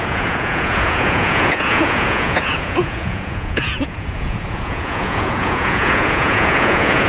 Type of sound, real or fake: fake